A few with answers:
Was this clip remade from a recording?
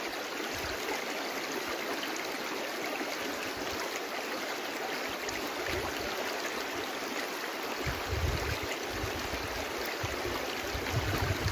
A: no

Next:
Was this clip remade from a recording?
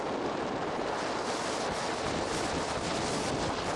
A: no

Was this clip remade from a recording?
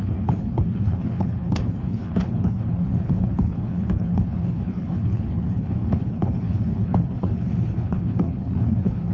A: yes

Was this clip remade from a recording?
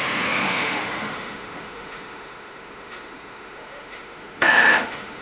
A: yes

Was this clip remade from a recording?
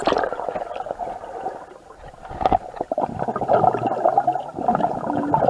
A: no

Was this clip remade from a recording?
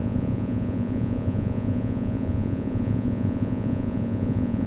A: yes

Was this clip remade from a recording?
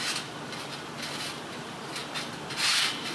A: no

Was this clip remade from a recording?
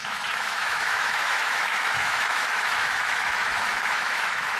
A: yes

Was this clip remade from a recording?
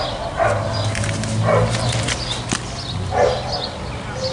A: no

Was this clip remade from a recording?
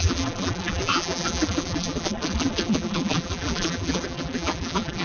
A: yes